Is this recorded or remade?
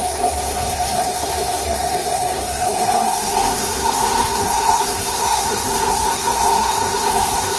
remade